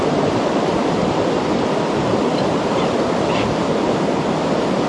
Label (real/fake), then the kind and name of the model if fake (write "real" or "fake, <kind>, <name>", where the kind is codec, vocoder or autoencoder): real